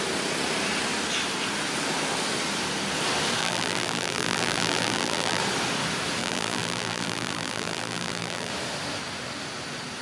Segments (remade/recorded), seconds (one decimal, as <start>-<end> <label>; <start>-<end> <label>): 0.0-3.4 recorded; 3.4-5.4 remade; 5.4-6.2 recorded; 6.2-8.5 remade; 8.5-10.0 recorded